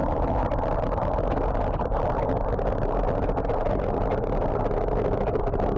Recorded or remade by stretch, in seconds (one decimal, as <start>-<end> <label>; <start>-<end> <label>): 0.0-5.8 recorded